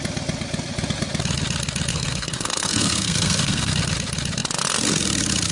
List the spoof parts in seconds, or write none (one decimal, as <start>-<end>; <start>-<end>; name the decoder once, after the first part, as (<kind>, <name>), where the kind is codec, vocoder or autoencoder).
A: 1.9-3.7 (codec, SNAC)